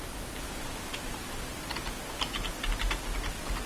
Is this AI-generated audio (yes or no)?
no